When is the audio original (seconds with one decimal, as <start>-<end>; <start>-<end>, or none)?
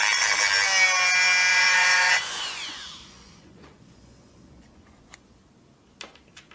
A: 0.0-1.5; 5.4-6.5